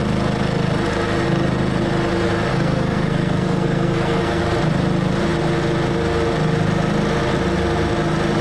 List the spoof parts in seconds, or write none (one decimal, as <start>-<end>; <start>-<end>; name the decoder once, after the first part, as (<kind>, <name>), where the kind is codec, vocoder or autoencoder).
2.5-4.4 (codec, SNAC)